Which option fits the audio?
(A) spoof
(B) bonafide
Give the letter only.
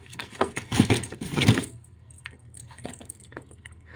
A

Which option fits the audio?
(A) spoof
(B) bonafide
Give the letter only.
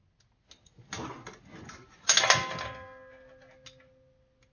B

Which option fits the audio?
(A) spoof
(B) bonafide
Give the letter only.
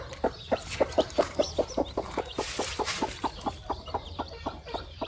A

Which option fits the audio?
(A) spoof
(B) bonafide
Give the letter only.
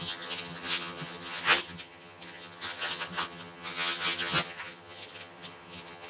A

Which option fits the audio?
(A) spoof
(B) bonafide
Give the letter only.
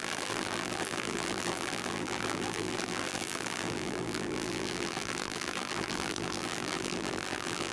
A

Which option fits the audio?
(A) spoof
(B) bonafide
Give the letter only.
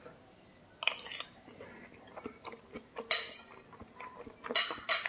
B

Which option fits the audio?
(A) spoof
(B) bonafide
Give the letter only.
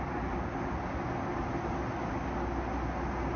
B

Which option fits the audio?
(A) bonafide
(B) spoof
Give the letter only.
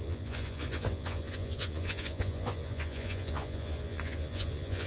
B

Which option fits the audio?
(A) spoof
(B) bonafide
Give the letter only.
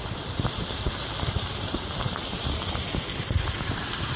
A